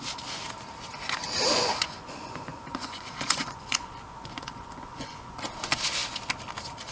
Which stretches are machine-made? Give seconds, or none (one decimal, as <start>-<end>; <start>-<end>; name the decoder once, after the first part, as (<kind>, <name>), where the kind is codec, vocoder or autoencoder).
1.5-5.4 (vocoder, Vocos)